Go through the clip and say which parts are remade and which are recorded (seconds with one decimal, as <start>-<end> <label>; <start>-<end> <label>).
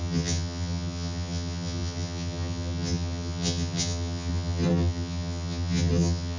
0.0-6.4 remade